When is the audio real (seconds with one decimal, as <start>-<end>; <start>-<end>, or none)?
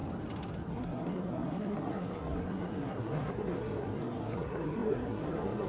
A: 0.0-0.7